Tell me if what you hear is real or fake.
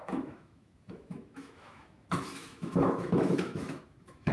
fake